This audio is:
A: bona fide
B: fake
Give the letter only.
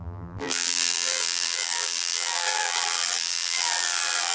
B